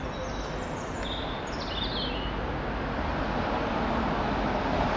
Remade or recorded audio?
recorded